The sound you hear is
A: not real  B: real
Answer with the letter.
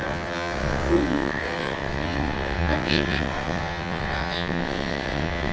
A